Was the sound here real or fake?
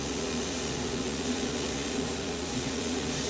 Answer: fake